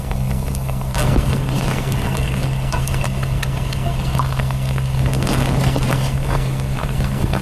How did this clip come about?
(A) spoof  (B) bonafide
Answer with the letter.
A